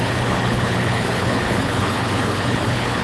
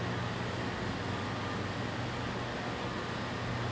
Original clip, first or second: second